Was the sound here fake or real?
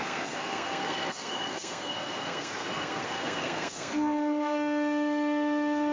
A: fake